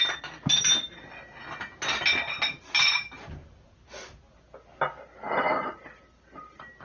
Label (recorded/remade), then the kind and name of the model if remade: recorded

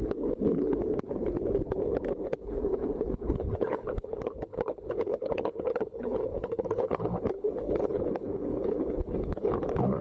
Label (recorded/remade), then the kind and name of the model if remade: remade, codec, HILCodec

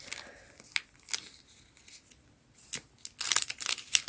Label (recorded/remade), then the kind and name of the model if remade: recorded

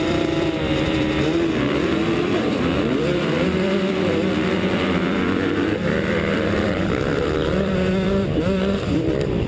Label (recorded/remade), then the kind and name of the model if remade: remade, vocoder, BigVGAN v2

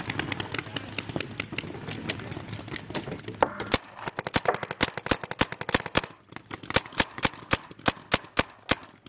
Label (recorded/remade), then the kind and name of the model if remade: recorded